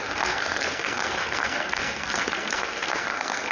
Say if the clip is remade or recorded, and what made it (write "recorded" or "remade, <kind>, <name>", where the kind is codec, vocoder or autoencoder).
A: remade, codec, SNAC